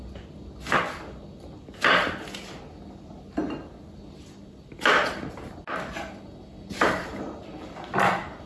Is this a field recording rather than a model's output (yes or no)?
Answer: yes